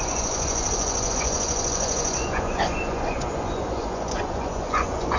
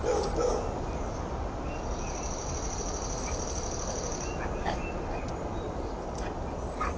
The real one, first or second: second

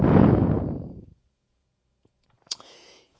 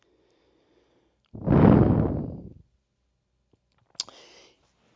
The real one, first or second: second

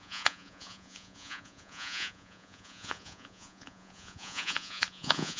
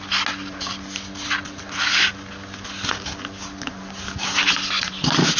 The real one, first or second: second